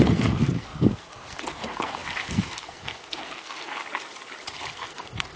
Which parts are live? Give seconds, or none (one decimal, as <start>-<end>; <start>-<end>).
3.8-4.7